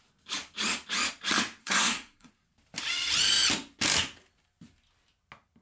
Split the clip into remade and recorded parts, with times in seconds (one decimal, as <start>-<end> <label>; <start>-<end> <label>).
0.0-1.6 recorded; 1.6-2.3 remade; 2.3-5.6 recorded